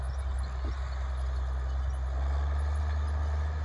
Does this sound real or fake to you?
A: real